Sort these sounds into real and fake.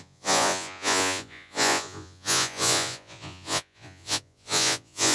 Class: fake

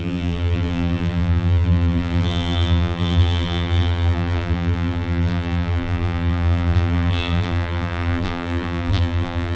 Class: fake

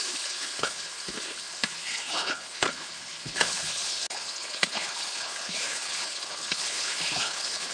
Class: fake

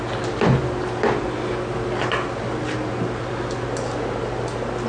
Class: real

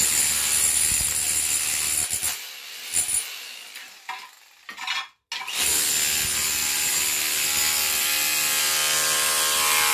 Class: real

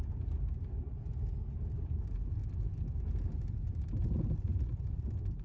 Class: real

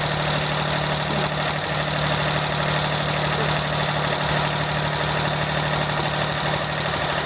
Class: real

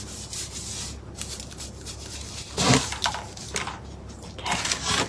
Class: real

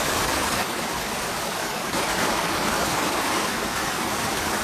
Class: fake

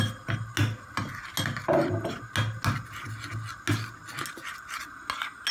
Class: real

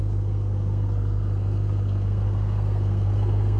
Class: fake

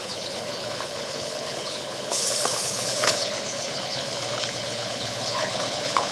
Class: fake